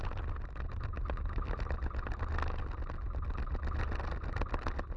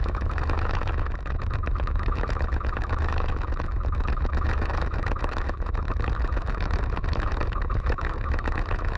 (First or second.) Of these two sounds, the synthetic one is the second